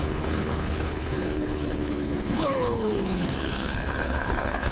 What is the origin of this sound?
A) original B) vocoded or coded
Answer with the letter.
B